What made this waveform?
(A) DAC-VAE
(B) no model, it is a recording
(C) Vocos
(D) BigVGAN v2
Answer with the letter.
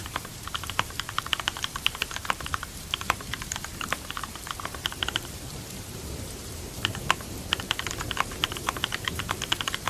D